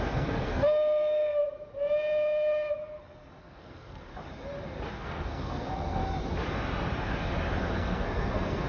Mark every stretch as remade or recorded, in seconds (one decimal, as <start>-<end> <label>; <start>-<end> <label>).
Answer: 0.0-1.4 remade; 1.4-3.4 recorded; 3.4-4.1 remade; 4.1-4.9 recorded; 4.9-6.0 remade; 6.0-7.6 recorded; 7.6-8.7 remade